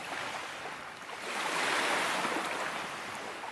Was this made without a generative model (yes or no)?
yes